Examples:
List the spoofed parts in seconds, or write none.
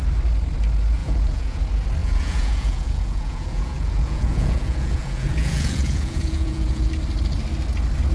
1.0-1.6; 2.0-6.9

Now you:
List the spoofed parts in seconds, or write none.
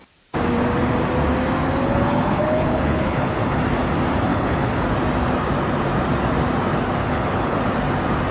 1.8-3.6; 4.3-4.8; 7.0-7.6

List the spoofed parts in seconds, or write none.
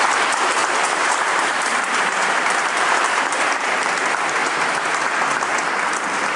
0.6-3.9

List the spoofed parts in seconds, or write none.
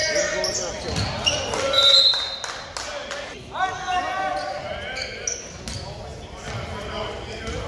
none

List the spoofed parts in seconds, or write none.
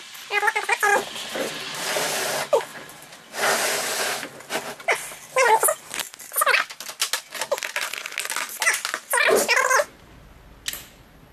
none